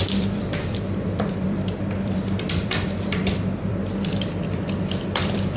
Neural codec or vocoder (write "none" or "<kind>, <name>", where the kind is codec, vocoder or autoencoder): vocoder, BigVGAN v2